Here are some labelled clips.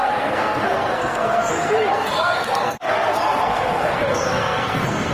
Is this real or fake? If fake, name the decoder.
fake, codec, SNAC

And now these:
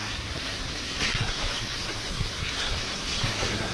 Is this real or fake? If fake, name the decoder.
fake, codec, SNAC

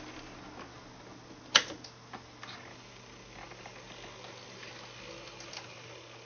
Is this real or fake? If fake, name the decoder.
real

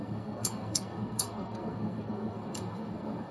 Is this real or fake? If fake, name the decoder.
fake, codec, SNAC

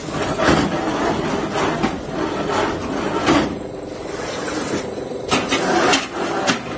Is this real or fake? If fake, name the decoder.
real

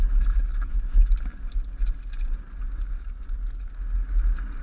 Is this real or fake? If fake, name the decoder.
real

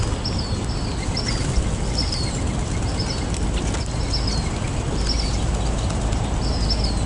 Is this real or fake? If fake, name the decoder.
real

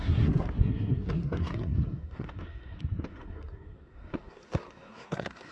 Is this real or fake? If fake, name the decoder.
fake, codec, SNAC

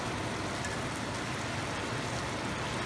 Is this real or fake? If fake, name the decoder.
real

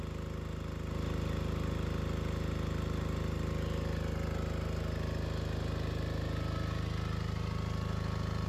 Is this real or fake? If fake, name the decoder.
real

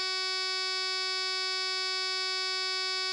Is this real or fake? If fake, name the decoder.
real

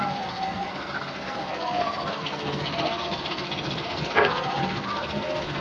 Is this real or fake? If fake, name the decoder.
fake, codec, SNAC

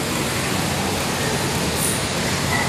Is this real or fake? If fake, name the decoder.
real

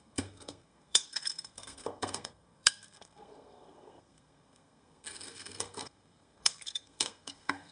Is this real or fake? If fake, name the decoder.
fake, codec, SNAC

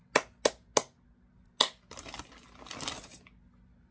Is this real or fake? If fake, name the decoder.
real